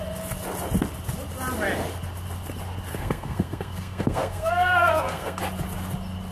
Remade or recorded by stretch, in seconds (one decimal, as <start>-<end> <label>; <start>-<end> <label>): 0.0-2.9 recorded; 2.9-5.4 remade; 5.4-6.3 recorded